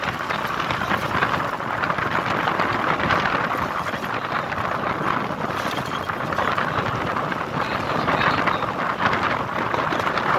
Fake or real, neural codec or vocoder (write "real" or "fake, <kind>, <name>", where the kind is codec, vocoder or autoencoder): real